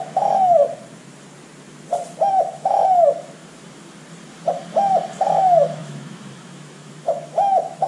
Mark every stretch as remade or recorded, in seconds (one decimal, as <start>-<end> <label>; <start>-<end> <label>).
0.0-0.6 remade; 0.6-2.3 recorded; 2.3-3.4 remade; 3.4-5.3 recorded; 5.3-7.9 remade